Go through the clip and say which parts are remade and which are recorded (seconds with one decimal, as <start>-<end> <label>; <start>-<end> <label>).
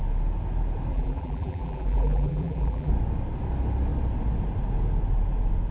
0.0-0.9 recorded; 0.9-2.9 remade; 2.9-5.7 recorded